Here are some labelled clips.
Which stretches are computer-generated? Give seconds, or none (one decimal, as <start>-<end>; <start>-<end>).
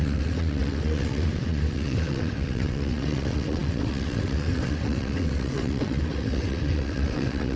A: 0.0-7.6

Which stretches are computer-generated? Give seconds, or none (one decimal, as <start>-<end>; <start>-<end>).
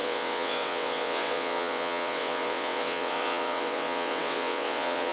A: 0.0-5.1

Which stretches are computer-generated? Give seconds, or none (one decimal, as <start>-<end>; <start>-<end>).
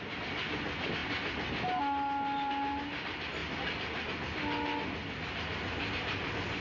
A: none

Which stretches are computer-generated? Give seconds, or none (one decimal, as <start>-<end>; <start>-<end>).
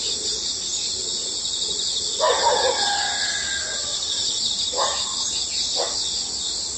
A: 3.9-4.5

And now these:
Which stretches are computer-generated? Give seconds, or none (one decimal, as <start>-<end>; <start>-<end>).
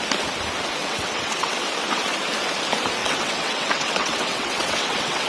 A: 0.8-1.5; 3.0-5.3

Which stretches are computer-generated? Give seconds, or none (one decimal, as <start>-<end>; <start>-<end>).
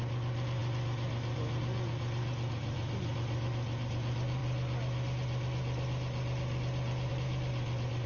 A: none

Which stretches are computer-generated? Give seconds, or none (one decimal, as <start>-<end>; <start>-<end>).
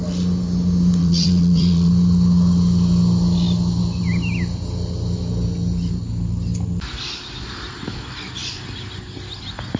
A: 1.0-1.9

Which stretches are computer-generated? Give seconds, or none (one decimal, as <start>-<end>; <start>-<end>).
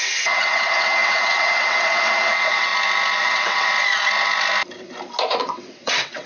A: 0.0-2.7; 3.2-3.7; 5.3-6.3